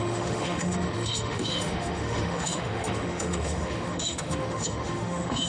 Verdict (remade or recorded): remade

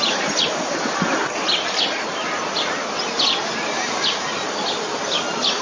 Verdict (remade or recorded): recorded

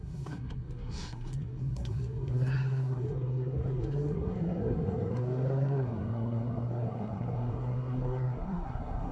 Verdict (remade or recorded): remade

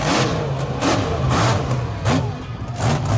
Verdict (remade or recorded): recorded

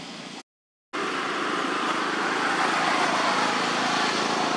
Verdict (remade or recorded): recorded